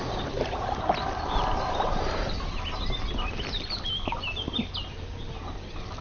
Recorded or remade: recorded